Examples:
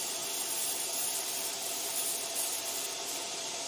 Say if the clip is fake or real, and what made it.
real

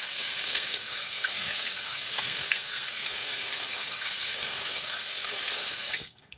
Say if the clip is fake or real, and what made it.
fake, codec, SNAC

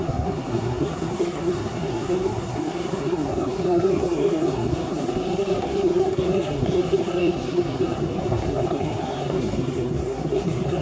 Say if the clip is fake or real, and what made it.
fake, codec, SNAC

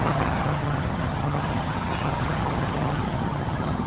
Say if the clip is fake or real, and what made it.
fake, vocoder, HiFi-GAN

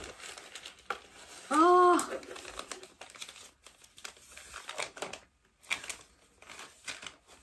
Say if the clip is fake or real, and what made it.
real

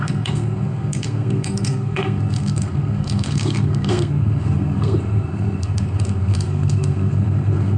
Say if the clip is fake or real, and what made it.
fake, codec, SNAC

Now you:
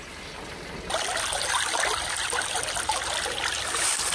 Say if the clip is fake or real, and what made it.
real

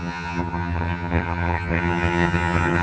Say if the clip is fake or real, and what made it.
fake, vocoder, HiFi-GAN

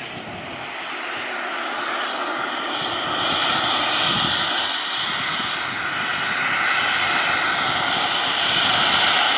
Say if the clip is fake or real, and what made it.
real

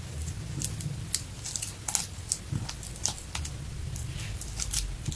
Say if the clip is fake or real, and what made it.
real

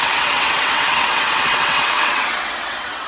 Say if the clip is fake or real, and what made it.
fake, vocoder, WaveNeXt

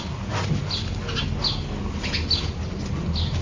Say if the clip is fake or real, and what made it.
real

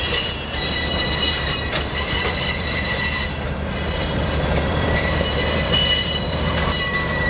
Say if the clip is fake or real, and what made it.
fake, vocoder, BigVGAN v2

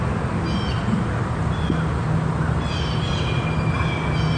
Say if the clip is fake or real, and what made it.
real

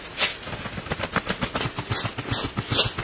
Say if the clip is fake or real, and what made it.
real